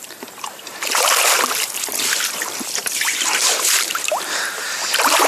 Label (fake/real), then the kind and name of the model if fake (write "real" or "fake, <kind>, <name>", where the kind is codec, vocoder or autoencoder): fake, vocoder, BigVGAN v2